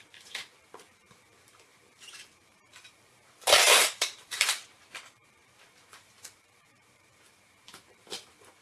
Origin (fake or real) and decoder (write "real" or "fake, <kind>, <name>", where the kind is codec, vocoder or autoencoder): fake, vocoder, BigVGAN v2